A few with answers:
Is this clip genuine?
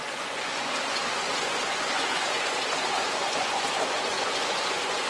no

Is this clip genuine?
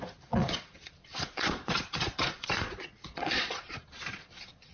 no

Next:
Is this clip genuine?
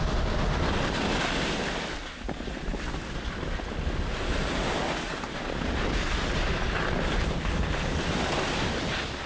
yes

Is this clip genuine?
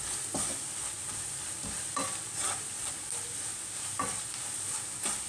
yes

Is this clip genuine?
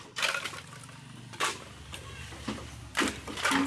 yes